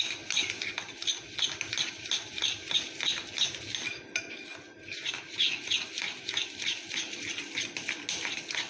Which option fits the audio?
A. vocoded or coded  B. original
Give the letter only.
B